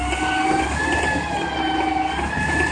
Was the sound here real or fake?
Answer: real